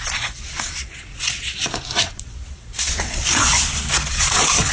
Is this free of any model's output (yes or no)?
no